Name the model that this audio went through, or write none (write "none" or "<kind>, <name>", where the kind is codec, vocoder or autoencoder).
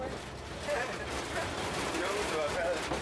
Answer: vocoder, BigVGAN v2